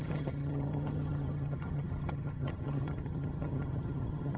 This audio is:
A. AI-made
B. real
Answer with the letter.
A